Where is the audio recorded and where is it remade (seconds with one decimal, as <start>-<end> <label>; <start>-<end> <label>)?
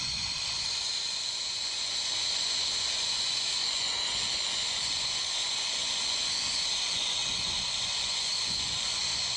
0.0-9.4 remade